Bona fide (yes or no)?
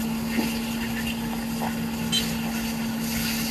yes